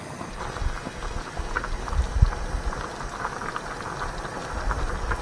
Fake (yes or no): no